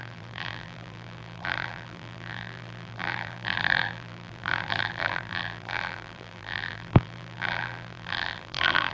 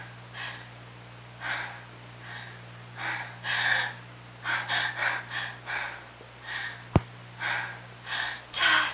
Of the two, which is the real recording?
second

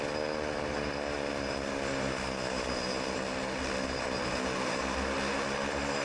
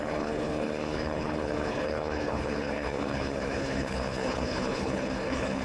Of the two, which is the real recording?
first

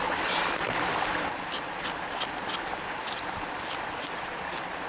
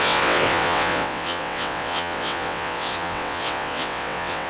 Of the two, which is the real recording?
first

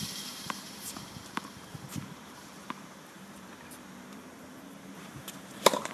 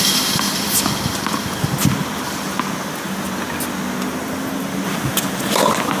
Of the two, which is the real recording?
second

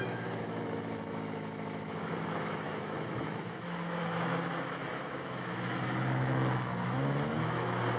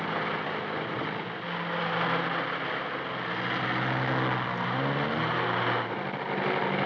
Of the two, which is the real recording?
second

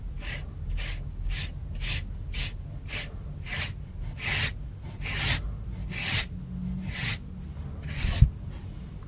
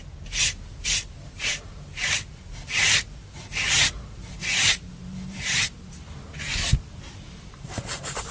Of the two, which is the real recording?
first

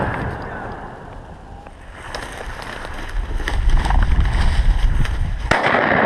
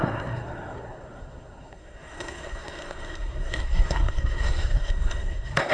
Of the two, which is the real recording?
first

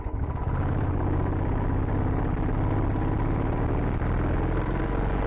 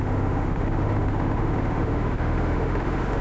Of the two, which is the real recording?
first